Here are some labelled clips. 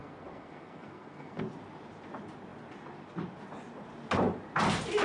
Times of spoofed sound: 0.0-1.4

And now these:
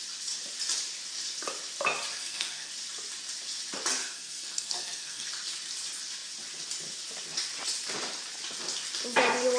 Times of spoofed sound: 2.1-2.7; 4.0-5.3

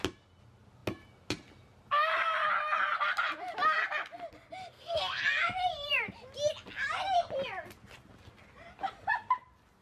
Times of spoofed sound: 4.6-5.2

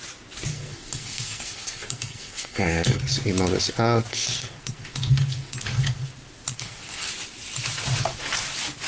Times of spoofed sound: 0.5-3.0; 4.1-6.1; 6.5-7.1

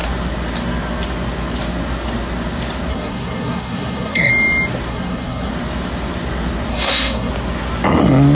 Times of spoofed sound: 2.9-4.3; 4.9-5.5; 6.7-7.3

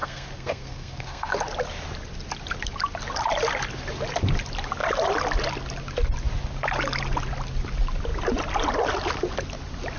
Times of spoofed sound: 0.0-1.4

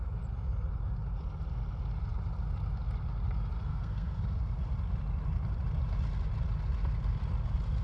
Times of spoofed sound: 3.7-4.2

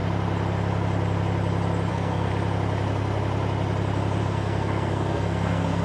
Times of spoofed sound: 1.9-2.3; 4.2-5.8